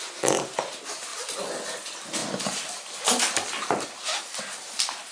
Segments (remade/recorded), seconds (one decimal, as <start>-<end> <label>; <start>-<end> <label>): 0.0-5.1 recorded